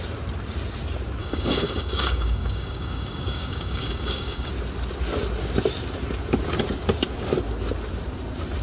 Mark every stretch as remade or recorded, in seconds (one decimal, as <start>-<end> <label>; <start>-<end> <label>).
0.0-1.2 recorded; 1.2-4.5 remade; 4.5-8.6 recorded